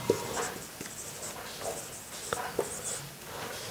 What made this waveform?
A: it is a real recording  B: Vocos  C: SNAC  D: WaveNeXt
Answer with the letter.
A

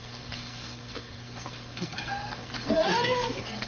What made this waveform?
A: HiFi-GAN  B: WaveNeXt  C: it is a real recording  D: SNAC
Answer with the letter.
D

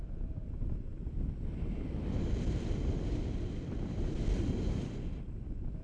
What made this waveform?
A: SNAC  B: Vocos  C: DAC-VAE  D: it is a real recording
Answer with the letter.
D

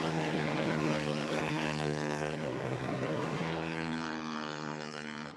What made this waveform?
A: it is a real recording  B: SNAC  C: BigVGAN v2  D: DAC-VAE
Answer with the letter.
B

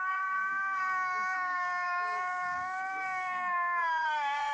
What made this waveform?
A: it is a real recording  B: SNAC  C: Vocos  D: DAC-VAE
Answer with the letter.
B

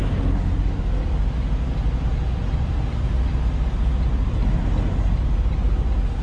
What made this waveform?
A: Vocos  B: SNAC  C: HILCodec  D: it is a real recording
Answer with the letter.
D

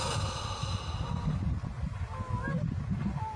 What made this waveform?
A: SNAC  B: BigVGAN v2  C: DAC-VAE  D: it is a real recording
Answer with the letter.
D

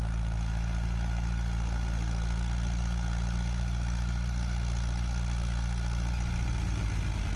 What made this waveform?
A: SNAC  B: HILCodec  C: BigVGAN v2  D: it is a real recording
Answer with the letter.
D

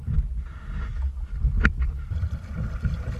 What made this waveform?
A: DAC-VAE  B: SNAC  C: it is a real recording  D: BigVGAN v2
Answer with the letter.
C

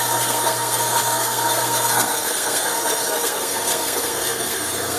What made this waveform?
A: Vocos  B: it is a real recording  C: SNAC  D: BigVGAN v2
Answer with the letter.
C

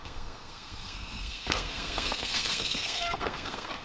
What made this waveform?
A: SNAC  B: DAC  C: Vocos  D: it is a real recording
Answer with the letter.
A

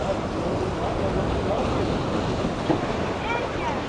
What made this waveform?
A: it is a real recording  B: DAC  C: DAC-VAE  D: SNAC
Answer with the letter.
A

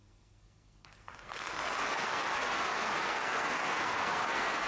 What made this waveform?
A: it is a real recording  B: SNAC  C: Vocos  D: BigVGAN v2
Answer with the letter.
B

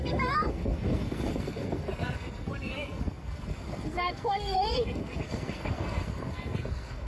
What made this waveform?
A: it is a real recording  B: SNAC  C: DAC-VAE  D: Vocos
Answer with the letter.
B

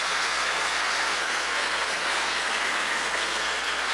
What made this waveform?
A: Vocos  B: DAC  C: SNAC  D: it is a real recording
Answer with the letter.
C